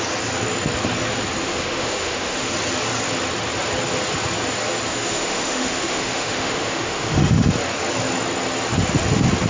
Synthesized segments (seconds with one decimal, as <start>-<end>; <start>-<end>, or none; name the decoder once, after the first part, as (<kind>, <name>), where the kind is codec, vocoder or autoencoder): 1.4-2.5 (autoencoder, DAC-VAE); 4.9-7.5